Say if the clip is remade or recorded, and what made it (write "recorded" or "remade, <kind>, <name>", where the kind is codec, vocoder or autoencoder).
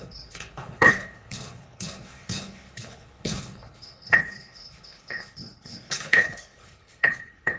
remade, codec, HILCodec